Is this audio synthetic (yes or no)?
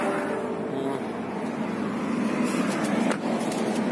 no